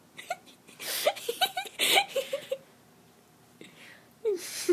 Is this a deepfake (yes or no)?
no